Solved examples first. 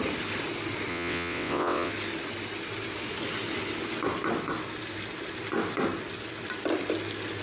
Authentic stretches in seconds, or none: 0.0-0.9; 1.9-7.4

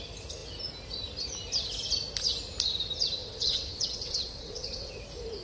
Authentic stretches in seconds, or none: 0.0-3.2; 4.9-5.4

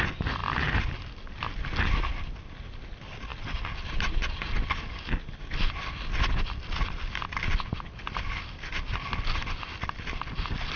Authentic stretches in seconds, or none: 0.0-10.8

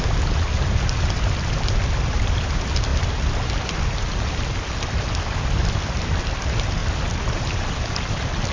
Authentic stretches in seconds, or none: 0.0-8.5

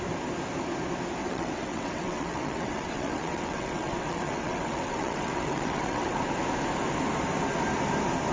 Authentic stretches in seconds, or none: 0.0-1.2; 6.2-8.3

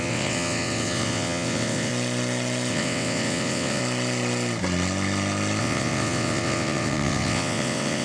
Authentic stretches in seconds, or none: 1.9-2.7; 3.8-5.6